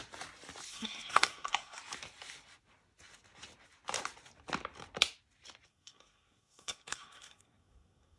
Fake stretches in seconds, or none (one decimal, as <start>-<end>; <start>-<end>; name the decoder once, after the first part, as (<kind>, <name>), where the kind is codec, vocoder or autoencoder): 0.7-1.8 (codec, SNAC); 5.7-8.2